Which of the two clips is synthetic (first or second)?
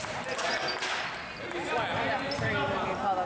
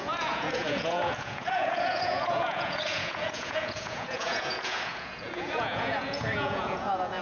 second